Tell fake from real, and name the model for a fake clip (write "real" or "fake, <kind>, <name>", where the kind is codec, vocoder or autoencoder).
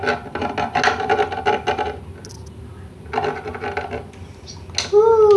real